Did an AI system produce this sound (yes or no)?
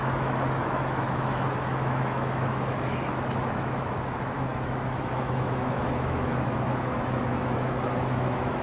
yes